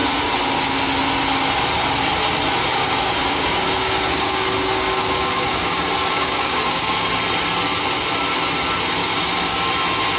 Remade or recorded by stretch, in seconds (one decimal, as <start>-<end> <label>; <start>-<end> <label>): 0.0-2.7 recorded; 2.7-7.2 remade; 7.2-9.0 recorded; 9.0-9.7 remade; 9.7-10.2 recorded